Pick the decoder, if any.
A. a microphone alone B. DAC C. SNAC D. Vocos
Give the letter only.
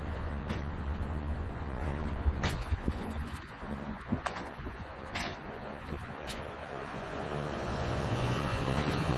D